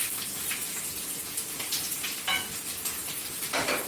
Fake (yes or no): no